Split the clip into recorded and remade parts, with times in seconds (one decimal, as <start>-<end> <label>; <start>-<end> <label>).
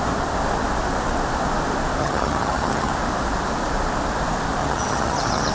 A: 0.0-2.0 recorded; 2.0-2.9 remade; 2.9-4.6 recorded; 4.6-5.5 remade